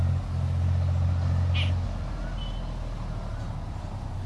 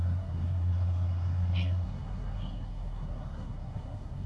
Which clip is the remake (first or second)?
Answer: second